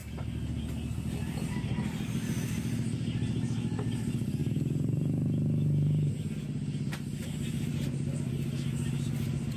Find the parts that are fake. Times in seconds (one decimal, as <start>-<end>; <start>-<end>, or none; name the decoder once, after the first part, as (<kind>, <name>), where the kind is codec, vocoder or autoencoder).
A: 4.4-6.1 (vocoder, BigVGAN v2); 7.2-8.3